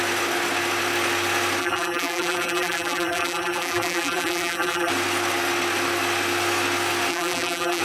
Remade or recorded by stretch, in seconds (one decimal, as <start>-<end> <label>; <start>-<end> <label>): 0.0-1.6 recorded; 1.6-4.9 remade; 4.9-7.1 recorded; 7.1-7.8 remade